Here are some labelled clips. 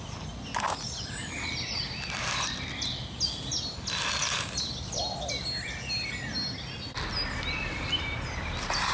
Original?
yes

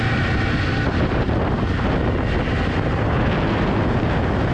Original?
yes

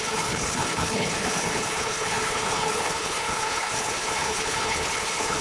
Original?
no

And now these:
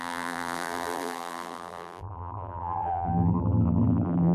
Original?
no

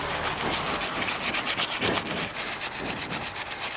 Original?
yes